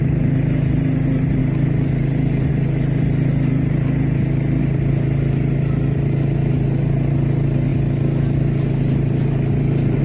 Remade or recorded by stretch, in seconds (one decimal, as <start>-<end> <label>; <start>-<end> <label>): 0.0-10.0 recorded